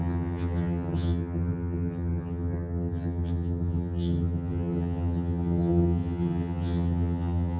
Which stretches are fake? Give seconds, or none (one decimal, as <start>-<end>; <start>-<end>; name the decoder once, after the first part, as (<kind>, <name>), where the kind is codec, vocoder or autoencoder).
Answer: 0.0-7.6 (vocoder, HiFi-GAN)

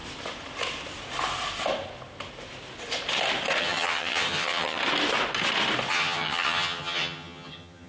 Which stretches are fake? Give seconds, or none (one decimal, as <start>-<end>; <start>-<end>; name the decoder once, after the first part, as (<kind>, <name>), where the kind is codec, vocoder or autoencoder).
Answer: 3.6-4.8 (vocoder, HiFi-GAN); 5.9-7.9

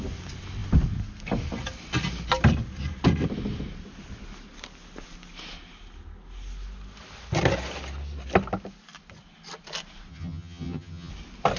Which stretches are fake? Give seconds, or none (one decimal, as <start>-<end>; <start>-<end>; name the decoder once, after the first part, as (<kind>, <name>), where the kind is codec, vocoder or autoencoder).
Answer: 10.1-11.1 (vocoder, HiFi-GAN)

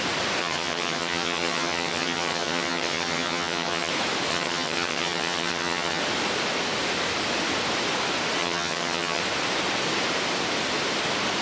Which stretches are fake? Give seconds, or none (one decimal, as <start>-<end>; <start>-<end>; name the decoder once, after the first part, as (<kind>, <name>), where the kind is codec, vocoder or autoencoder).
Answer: 0.4-3.9 (vocoder, HiFi-GAN); 4.3-6.0; 8.4-9.2

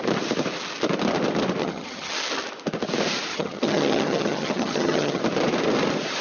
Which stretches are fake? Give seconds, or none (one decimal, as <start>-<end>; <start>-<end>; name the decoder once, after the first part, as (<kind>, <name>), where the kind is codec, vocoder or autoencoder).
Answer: 1.6-2.1 (vocoder, HiFi-GAN); 3.3-5.2

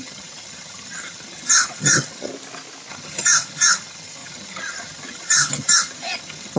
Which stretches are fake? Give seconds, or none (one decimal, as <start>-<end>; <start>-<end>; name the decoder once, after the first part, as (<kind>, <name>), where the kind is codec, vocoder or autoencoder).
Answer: 0.0-2.3 (vocoder, HiFi-GAN); 2.9-6.6

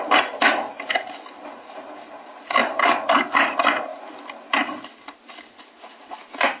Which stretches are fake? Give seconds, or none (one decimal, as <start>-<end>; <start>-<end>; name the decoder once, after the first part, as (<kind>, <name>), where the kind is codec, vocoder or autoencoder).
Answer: none